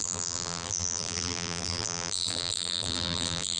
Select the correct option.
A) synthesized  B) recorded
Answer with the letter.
A